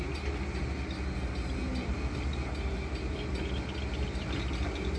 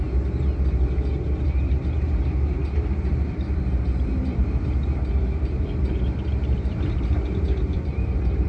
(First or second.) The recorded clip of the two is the first